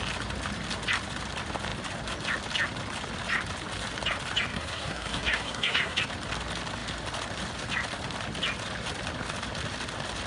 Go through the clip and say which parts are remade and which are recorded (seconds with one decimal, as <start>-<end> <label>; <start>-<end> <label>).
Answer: 0.0-4.5 recorded; 4.5-6.0 remade; 6.0-10.3 recorded